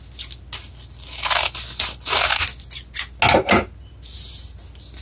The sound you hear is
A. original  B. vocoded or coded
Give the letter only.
A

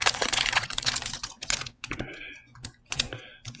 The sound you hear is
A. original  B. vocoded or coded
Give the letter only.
B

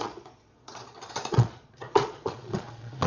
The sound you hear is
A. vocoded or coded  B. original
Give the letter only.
A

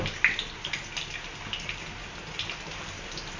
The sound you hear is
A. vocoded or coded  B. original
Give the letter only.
B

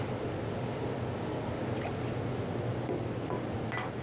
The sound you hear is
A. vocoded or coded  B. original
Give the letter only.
B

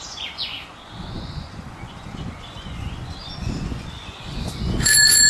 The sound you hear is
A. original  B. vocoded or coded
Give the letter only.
B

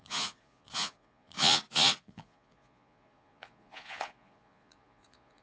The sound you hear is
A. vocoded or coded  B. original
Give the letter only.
A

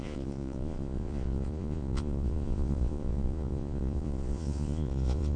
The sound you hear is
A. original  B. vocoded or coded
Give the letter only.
B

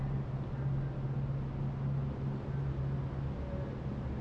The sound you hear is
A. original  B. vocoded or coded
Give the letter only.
A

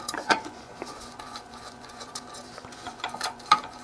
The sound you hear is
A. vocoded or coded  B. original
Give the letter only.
A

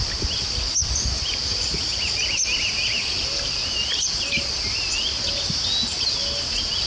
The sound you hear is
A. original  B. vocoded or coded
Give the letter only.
A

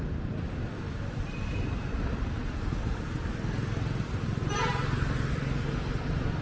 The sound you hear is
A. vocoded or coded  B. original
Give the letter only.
B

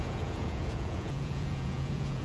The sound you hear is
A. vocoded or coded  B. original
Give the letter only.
A